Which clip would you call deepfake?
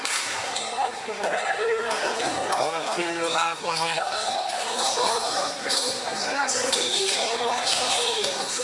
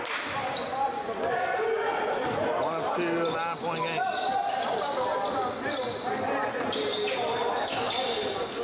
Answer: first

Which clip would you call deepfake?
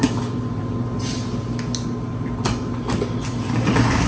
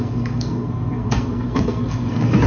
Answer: second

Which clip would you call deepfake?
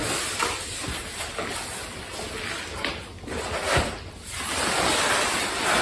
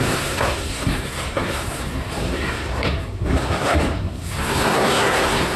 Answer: second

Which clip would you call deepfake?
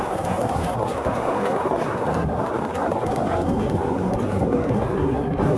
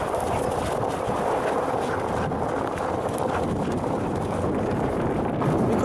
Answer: first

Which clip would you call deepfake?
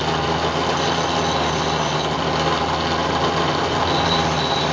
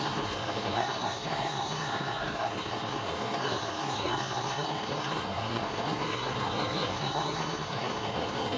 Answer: second